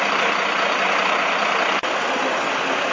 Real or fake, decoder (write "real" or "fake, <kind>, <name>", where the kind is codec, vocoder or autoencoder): real